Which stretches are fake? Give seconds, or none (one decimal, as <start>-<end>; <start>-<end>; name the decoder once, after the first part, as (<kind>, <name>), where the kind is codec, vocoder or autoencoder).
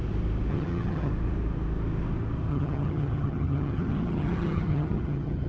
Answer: 0.5-1.1 (vocoder, HiFi-GAN); 2.5-5.5